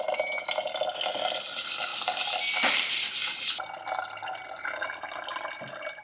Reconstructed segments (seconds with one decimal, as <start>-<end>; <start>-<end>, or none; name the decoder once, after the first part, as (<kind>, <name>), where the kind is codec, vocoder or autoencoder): none